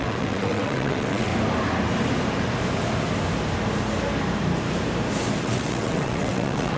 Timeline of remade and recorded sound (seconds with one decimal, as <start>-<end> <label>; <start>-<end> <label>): 0.0-1.3 remade; 1.3-5.4 recorded; 5.4-6.8 remade